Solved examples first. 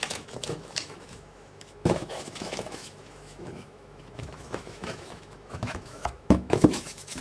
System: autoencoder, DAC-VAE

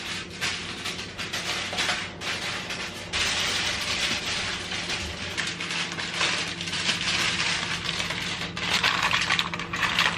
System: none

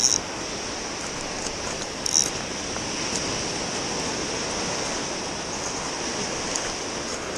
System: none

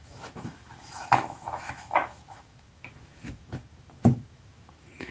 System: autoencoder, DAC-VAE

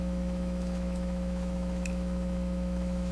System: autoencoder, DAC-VAE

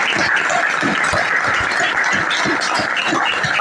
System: none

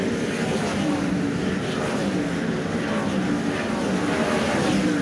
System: none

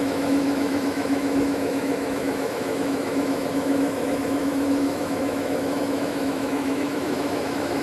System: autoencoder, DAC-VAE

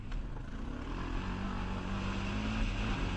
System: none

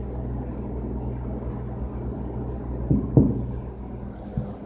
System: none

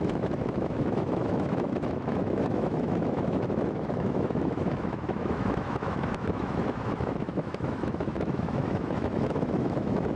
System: autoencoder, DAC-VAE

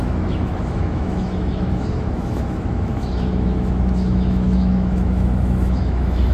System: autoencoder, DAC-VAE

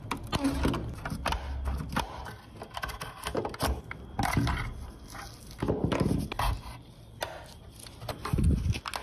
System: none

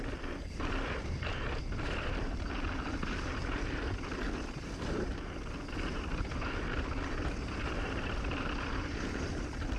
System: none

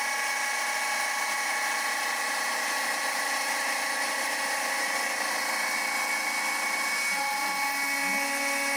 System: none